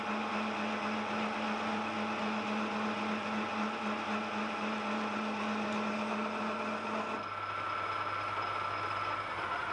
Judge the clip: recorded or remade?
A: recorded